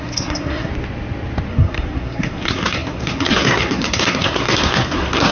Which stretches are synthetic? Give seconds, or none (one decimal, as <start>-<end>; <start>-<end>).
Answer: 0.0-0.7; 1.5-5.3

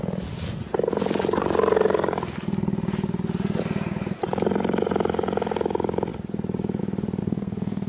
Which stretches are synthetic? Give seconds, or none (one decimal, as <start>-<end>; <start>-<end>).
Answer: 7.2-7.9